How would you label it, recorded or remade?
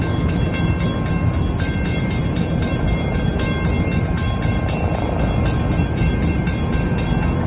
recorded